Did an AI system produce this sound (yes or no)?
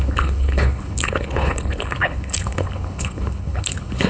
yes